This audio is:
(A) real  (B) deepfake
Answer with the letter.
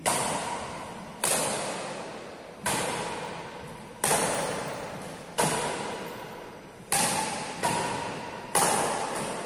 A